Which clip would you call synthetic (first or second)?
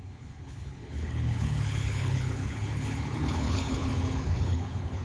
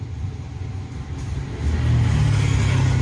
first